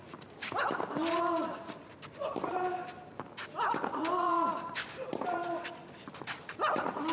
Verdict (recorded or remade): recorded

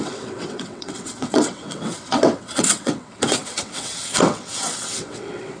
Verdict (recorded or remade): remade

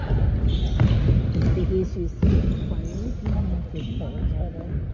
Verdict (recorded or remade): recorded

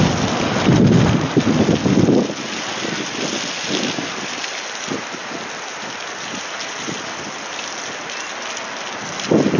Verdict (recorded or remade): recorded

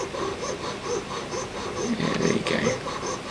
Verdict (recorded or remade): recorded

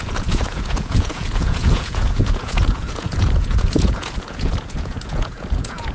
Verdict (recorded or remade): remade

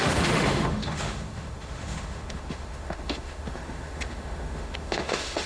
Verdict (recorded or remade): remade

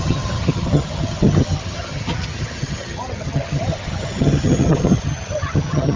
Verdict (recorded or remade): remade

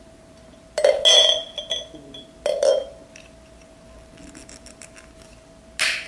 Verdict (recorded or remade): recorded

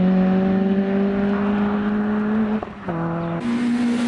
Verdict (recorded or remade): recorded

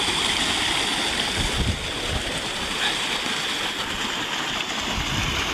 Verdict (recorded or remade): recorded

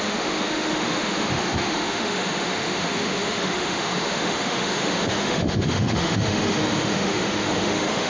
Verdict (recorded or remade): remade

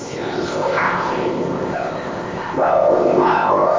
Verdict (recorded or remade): remade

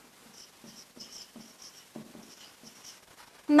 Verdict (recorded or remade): recorded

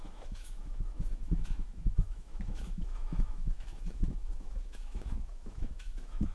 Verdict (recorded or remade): remade